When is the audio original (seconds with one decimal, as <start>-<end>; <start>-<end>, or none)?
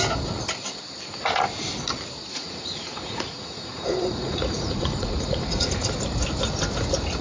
0.0-2.3; 5.7-7.2